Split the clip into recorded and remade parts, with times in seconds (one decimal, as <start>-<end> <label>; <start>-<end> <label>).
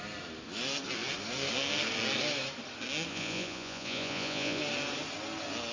0.0-3.1 recorded; 3.1-4.6 remade; 4.6-5.7 recorded